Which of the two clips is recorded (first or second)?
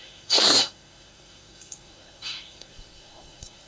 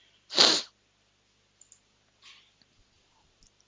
second